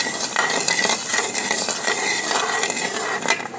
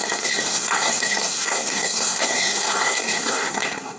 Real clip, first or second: first